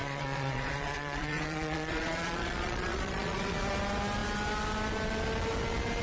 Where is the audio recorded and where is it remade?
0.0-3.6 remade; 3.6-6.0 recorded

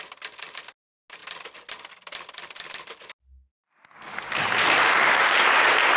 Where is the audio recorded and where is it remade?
0.0-6.0 recorded

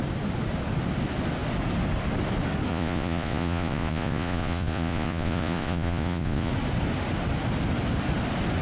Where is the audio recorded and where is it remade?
0.0-2.7 recorded; 2.7-6.5 remade; 6.5-8.6 recorded